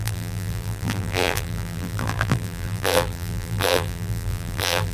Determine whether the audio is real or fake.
fake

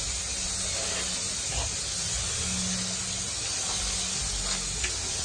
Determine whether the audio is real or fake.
real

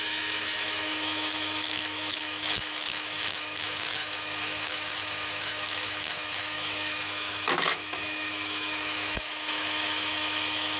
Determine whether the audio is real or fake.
fake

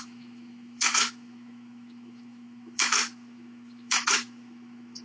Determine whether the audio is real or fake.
fake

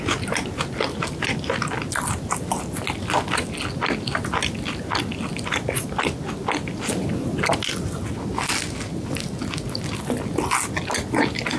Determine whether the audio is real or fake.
real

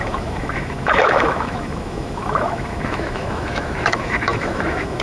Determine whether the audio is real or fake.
fake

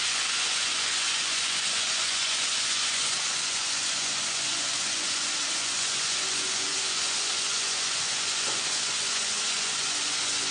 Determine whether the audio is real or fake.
fake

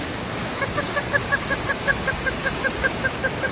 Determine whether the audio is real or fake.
fake